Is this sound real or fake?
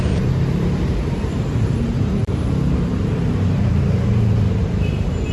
fake